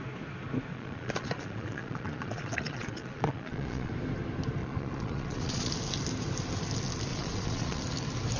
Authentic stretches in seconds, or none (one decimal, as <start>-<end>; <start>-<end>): 0.0-0.7; 3.9-4.6; 5.7-7.1; 7.8-8.4